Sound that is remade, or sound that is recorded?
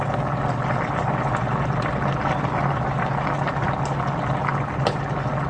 recorded